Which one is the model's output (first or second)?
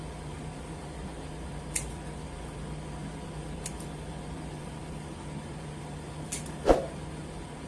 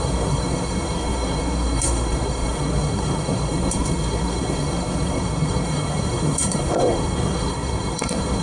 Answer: second